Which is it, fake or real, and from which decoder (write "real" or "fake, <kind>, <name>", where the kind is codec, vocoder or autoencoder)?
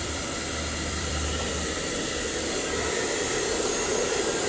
fake, vocoder, BigVGAN v2